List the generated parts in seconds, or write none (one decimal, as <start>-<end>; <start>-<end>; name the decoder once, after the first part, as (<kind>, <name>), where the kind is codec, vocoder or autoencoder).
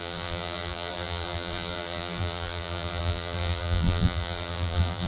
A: 0.0-5.1 (vocoder, BigVGAN v2)